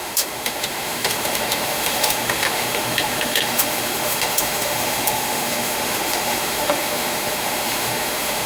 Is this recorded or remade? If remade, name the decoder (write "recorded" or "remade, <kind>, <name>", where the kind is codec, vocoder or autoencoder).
remade, autoencoder, DAC-VAE